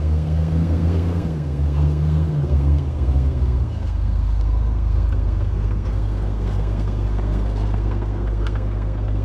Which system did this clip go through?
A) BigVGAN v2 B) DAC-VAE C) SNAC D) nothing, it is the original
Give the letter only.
C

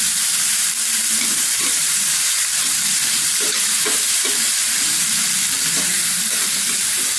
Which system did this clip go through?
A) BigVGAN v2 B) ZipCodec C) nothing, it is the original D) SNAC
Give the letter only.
A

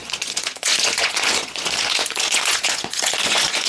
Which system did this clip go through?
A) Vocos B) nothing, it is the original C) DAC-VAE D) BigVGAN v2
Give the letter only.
A